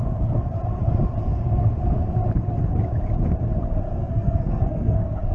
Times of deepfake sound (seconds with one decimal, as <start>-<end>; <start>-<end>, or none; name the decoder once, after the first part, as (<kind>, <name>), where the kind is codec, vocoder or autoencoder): 4.0-5.3 (codec, SNAC)